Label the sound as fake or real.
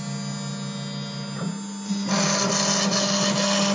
real